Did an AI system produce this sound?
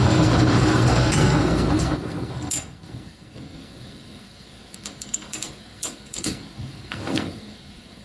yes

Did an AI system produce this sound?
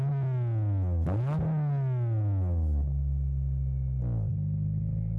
no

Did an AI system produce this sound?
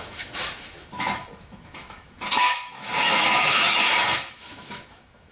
yes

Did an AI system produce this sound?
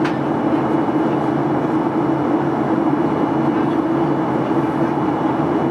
no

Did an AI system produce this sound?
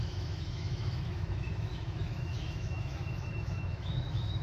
yes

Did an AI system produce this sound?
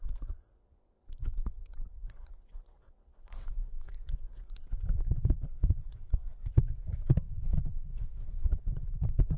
yes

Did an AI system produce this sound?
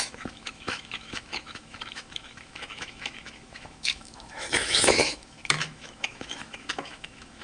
yes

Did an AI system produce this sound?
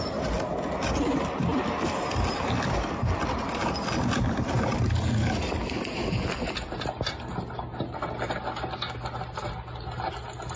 no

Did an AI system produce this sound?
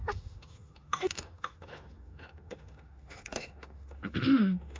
yes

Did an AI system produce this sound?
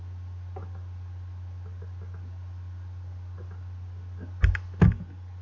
no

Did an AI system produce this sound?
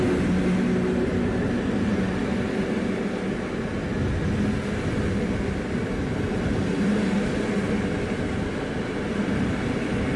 no